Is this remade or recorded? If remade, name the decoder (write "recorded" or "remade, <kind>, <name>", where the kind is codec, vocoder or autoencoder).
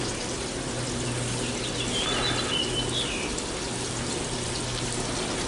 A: recorded